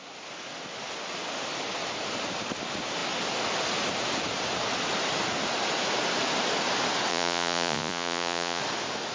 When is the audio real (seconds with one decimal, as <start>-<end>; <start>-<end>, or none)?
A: 0.0-7.1; 8.6-9.1